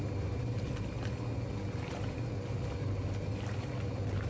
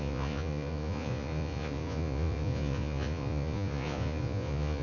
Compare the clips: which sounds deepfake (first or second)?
second